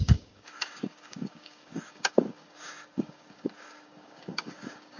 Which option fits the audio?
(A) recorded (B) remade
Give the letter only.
B